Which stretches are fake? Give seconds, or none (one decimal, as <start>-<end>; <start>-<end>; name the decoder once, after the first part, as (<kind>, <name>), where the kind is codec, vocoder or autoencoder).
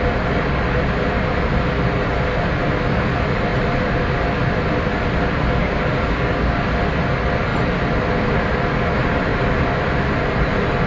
5.6-6.7 (codec, DAC)